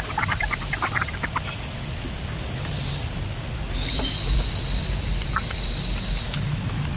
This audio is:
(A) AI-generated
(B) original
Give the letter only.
B